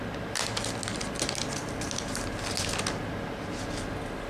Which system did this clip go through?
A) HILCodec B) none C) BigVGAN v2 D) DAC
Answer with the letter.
B